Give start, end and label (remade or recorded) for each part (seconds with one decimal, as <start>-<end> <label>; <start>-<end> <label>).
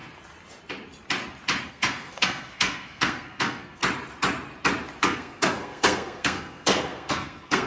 0.0-1.7 recorded; 1.7-3.8 remade; 3.8-5.0 recorded; 5.0-7.7 remade